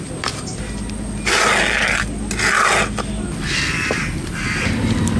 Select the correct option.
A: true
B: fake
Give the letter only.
A